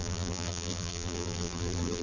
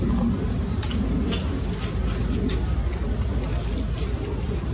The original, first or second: second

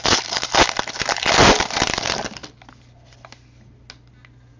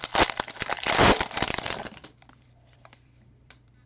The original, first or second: first